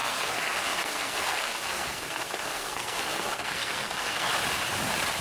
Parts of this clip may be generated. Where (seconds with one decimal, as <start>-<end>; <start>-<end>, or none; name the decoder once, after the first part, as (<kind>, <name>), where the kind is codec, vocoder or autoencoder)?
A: 0.0-4.3 (codec, SNAC)